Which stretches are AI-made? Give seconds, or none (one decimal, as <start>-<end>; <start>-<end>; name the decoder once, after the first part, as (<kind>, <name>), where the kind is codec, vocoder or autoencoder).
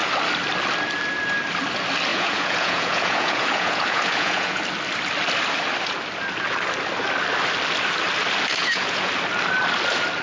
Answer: 2.1-4.6 (vocoder, Vocos); 8.6-9.1